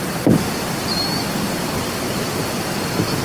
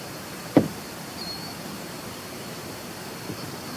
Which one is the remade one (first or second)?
second